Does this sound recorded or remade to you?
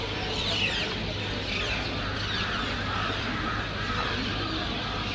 recorded